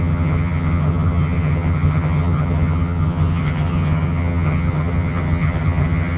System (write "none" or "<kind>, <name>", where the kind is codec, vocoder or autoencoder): vocoder, HiFi-GAN